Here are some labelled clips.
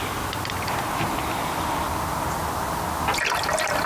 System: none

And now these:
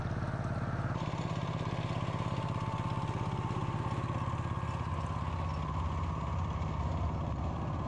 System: none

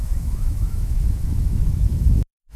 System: autoencoder, DAC-VAE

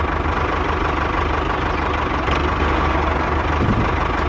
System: none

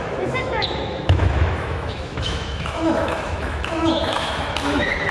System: autoencoder, DAC-VAE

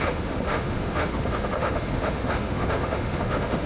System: autoencoder, DAC-VAE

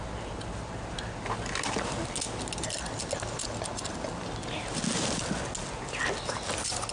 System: none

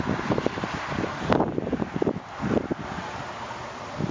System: none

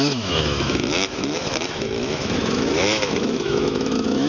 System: autoencoder, DAC-VAE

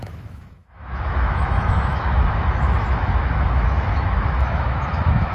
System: autoencoder, DAC-VAE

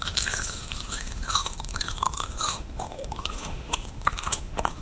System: autoencoder, DAC-VAE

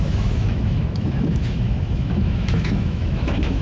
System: autoencoder, DAC-VAE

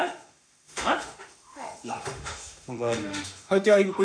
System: autoencoder, DAC-VAE